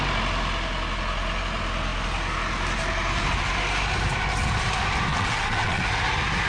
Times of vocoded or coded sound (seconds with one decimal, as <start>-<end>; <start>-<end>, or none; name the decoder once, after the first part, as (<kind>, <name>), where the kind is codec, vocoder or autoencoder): 5.1-5.8 (vocoder, WaveNeXt)